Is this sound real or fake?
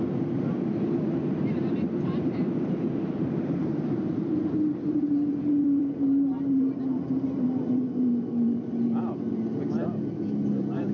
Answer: fake